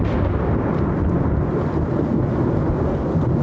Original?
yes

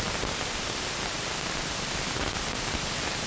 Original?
yes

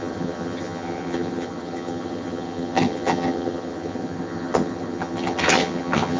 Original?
no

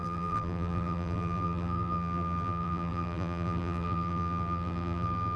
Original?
no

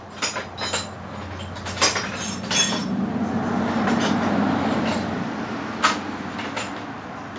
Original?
yes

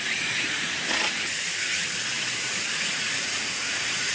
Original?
no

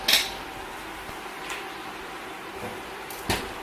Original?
yes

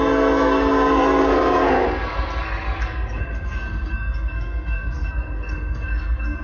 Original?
no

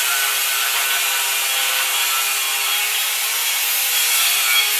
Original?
yes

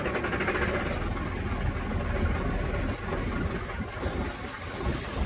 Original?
yes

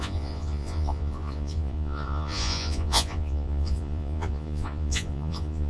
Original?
no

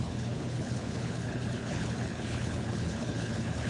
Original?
no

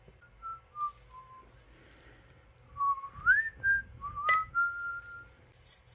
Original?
yes